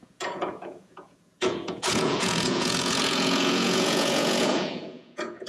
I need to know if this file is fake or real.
fake